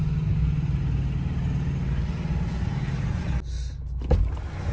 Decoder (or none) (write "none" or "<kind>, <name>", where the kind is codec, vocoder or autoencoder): none